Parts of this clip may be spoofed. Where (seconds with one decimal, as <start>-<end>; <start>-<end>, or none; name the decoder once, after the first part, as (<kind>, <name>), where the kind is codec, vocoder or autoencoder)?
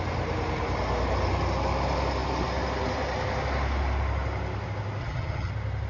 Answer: 5.0-5.5 (vocoder, HiFi-GAN)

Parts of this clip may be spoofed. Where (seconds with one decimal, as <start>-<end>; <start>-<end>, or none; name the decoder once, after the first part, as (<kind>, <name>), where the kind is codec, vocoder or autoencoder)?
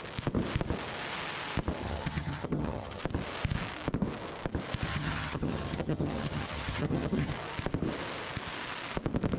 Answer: 1.8-3.0 (vocoder, HiFi-GAN); 4.9-7.3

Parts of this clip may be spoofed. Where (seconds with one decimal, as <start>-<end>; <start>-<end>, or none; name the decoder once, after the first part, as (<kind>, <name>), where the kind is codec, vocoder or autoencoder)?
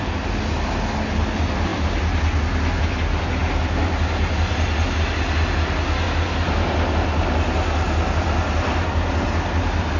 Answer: none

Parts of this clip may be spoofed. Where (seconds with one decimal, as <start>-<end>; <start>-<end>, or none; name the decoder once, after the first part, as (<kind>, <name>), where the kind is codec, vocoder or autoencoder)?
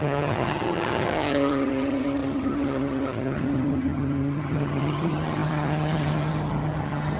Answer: 0.0-7.2 (vocoder, HiFi-GAN)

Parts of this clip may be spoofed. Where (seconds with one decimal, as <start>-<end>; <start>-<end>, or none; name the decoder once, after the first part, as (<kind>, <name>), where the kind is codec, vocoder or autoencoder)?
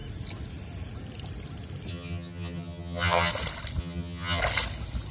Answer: 1.9-3.3 (vocoder, HiFi-GAN); 3.8-4.4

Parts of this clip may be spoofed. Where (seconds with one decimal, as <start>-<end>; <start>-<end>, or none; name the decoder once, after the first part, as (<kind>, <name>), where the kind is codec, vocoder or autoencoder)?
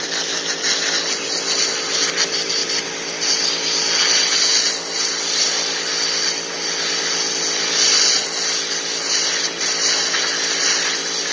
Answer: none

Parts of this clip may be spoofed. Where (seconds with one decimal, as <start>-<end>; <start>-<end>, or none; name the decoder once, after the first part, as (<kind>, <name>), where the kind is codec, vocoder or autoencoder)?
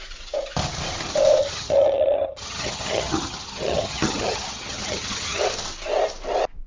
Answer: 1.4-5.4 (vocoder, HiFi-GAN)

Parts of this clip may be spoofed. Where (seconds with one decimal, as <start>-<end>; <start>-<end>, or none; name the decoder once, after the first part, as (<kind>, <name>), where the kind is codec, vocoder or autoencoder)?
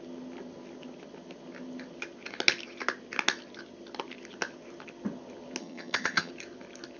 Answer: 5.6-6.3 (vocoder, HiFi-GAN)